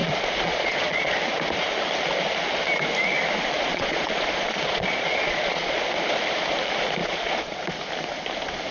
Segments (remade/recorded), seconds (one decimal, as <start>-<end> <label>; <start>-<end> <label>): 0.0-1.2 remade; 1.2-3.7 recorded; 3.7-5.8 remade; 5.8-7.0 recorded; 7.0-7.6 remade; 7.6-8.7 recorded